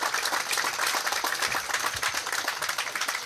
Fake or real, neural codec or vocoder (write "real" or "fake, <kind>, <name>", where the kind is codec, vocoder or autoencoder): fake, vocoder, BigVGAN v2